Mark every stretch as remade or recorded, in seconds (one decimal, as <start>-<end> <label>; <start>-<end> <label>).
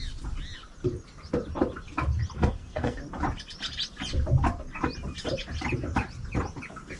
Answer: 0.0-2.4 recorded; 2.4-3.0 remade; 3.0-7.0 recorded